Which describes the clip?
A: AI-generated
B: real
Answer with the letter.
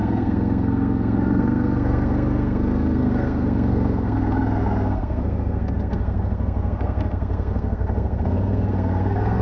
A